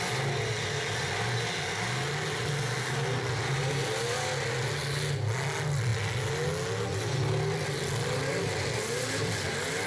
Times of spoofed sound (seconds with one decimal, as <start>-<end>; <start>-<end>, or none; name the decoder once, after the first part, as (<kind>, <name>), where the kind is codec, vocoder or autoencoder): none